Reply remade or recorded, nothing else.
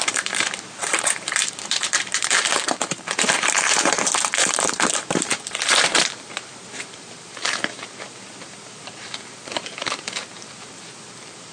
remade